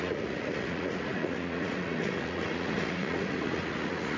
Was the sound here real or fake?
fake